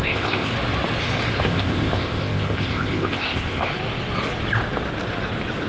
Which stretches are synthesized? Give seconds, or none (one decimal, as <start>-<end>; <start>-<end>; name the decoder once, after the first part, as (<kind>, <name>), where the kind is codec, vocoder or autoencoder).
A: 0.0-0.5 (codec, ZipCodec); 1.4-3.7